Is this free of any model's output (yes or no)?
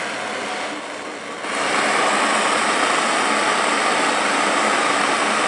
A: yes